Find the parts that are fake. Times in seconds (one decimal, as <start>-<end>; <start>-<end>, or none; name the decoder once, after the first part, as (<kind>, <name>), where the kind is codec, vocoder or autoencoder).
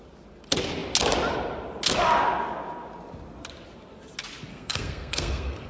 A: 4.5-5.7 (codec, SNAC)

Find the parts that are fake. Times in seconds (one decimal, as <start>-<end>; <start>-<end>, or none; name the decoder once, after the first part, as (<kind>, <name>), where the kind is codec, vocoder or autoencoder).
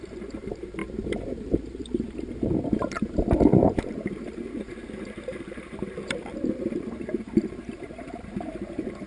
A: 0.0-9.1 (vocoder, BigVGAN v2)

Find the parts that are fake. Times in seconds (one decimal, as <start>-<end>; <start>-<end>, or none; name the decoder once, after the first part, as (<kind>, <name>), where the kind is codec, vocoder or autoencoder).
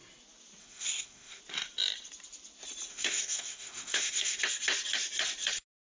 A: 0.6-1.4 (codec, SNAC); 2.9-4.4